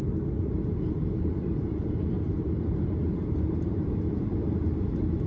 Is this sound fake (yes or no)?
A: yes